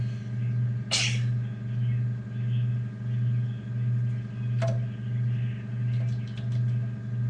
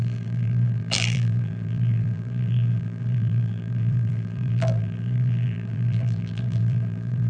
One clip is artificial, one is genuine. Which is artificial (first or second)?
second